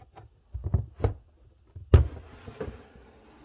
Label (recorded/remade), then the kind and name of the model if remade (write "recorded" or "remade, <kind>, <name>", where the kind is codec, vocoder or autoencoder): recorded